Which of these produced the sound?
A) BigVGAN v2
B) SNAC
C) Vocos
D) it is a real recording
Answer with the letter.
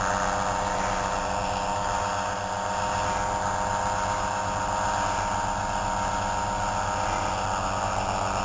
D